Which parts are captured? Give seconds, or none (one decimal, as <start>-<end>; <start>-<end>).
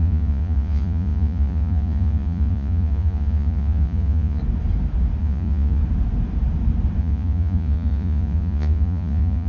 4.4-5.2; 5.8-7.0